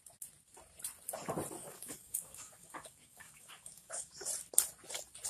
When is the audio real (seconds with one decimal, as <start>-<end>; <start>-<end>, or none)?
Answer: 0.0-1.6; 4.2-5.3